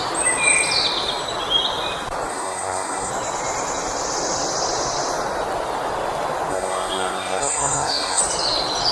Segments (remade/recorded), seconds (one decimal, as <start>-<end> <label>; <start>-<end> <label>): 0.0-2.3 recorded; 2.3-3.1 remade; 3.1-6.5 recorded; 6.5-8.2 remade; 8.2-8.9 recorded